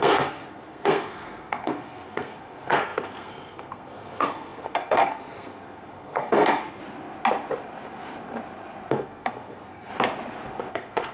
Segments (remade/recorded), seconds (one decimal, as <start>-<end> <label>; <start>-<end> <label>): 0.0-6.8 remade; 6.8-8.9 recorded; 8.9-9.9 remade; 9.9-10.7 recorded; 10.7-11.1 remade